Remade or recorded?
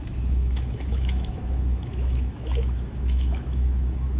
remade